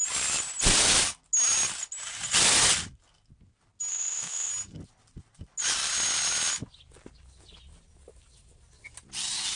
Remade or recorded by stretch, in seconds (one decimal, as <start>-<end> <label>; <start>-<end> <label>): 0.0-3.9 recorded; 3.9-4.5 remade; 4.5-9.6 recorded